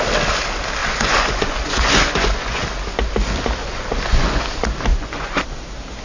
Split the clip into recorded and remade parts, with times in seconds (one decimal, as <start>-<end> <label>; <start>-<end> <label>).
0.0-0.8 recorded; 0.8-2.6 remade; 2.6-3.6 recorded; 3.6-4.4 remade; 4.4-4.9 recorded; 4.9-5.5 remade; 5.5-6.0 recorded